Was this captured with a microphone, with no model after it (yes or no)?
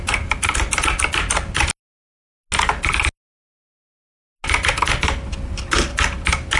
yes